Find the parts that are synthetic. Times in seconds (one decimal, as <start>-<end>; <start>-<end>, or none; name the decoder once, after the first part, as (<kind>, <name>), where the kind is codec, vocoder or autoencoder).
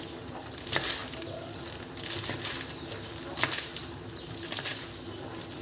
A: none